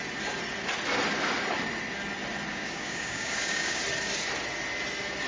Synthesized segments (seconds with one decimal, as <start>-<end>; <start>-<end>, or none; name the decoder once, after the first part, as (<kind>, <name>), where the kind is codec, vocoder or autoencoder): 2.5-3.8 (codec, DAC)